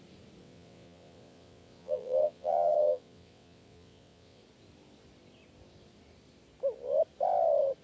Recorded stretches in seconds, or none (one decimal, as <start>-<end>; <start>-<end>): 0.0-0.4; 4.4-7.8